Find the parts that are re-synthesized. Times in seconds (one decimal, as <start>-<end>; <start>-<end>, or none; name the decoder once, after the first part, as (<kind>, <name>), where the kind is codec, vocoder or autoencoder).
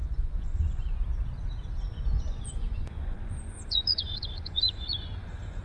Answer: 0.0-1.0 (vocoder, Vocos); 1.9-5.6